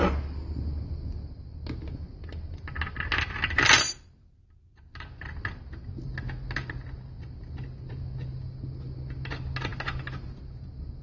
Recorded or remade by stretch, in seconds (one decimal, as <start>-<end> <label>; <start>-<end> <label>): 0.0-11.0 recorded